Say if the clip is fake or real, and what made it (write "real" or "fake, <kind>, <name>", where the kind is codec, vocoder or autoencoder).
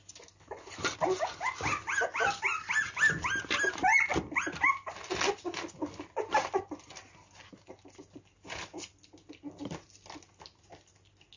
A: real